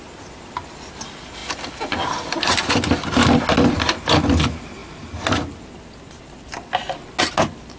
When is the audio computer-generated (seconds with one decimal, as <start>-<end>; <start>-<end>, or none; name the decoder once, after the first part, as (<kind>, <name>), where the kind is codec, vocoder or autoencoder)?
none